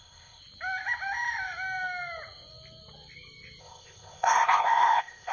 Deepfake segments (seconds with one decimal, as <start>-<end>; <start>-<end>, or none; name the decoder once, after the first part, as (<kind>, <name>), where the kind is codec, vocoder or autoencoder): 0.0-0.4 (codec, ZipCodec); 3.6-5.3